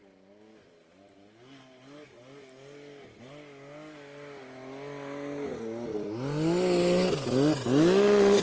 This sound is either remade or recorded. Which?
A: recorded